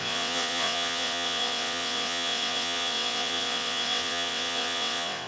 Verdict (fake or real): fake